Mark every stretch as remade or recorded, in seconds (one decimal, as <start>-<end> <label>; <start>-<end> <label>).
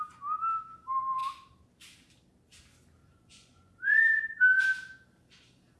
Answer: 0.0-3.0 recorded; 3.0-4.2 remade; 4.2-5.8 recorded